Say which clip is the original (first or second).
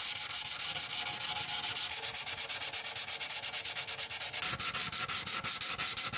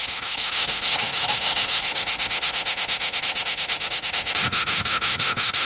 first